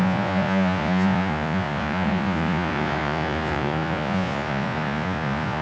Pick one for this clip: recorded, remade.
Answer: remade